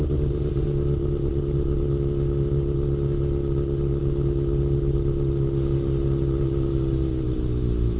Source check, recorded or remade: recorded